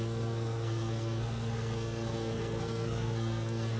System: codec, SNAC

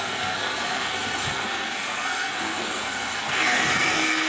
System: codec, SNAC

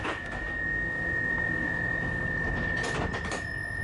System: none